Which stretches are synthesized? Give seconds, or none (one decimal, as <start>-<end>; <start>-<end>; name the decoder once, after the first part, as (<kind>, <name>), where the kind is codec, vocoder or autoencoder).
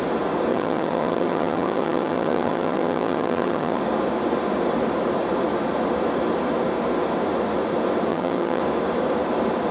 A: 0.5-3.8 (vocoder, HiFi-GAN); 8.1-8.6